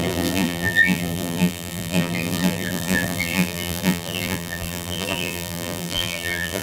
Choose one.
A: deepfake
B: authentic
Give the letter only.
A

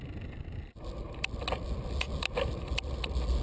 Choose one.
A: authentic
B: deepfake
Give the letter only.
A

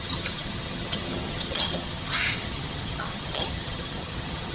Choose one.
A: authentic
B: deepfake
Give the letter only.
B